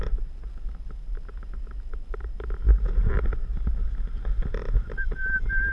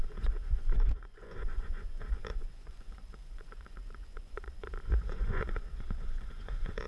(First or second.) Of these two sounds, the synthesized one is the second